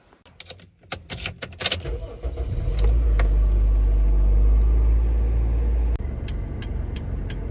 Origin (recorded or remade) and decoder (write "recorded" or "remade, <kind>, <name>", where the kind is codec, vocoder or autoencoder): recorded